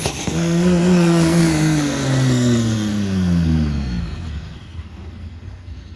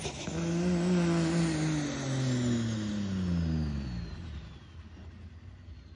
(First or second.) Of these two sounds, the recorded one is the second